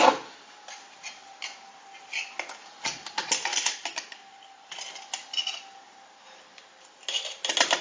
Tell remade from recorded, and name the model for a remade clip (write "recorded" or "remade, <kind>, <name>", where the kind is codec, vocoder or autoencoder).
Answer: recorded